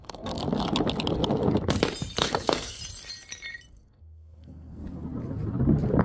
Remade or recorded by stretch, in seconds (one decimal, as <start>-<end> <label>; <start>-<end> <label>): 0.0-0.4 remade; 0.4-2.2 recorded; 2.2-2.8 remade; 2.8-3.7 recorded; 3.7-4.8 remade; 4.8-6.0 recorded